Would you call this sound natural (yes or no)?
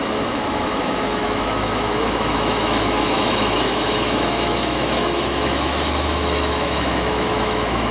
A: no